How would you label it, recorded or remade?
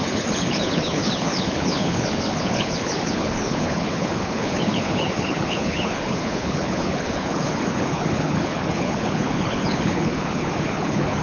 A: remade